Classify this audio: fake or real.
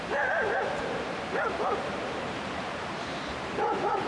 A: fake